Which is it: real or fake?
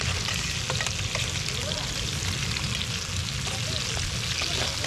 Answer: real